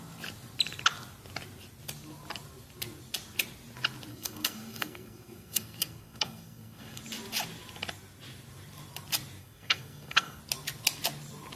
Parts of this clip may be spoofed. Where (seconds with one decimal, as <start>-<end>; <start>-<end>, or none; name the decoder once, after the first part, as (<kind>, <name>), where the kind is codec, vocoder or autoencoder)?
4.1-7.0 (codec, SNAC); 9.4-10.4